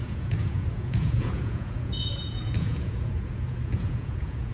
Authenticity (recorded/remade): remade